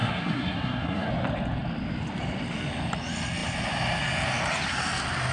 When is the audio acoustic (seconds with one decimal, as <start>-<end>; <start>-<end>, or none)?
1.1-5.3